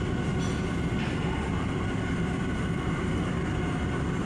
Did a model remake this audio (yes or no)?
no